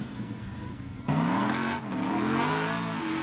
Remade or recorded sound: remade